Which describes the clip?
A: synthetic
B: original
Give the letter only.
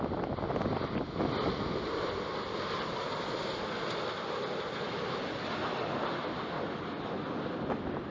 B